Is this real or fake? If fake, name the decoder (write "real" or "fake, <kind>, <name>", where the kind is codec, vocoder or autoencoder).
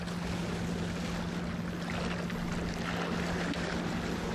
real